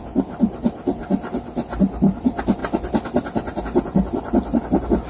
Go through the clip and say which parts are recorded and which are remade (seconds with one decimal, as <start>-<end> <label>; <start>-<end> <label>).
0.0-5.1 recorded